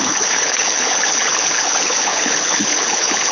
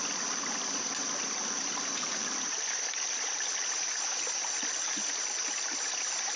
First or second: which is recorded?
second